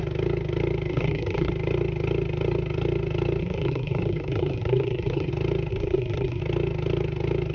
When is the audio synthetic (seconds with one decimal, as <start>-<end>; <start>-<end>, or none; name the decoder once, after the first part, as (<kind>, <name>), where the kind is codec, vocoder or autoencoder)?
0.9-1.5 (codec, SNAC); 3.4-5.3; 5.7-6.4